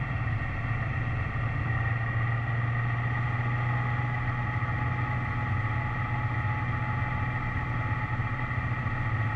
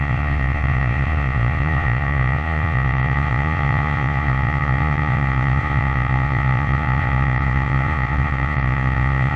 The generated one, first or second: second